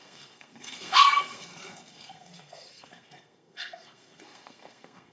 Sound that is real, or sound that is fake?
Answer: fake